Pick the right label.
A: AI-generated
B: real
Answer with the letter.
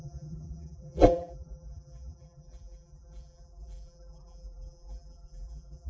A